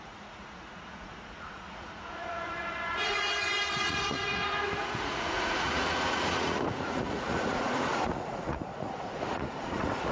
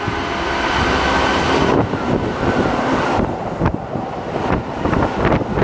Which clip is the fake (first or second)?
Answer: first